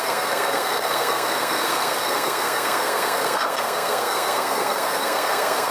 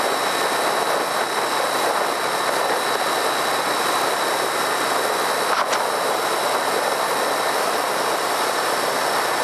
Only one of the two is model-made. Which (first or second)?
first